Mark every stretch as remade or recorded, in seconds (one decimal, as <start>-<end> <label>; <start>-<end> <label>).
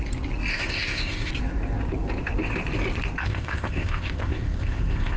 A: 0.0-0.5 recorded; 0.5-1.3 remade; 1.3-3.2 recorded; 3.2-5.2 remade